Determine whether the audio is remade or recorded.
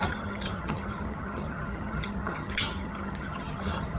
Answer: remade